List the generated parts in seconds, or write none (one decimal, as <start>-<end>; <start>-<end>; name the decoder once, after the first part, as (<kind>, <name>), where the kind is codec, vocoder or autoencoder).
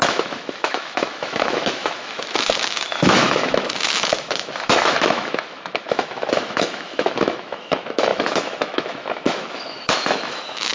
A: 0.0-10.7 (autoencoder, DAC-VAE)